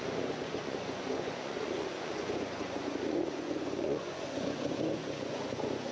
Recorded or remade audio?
remade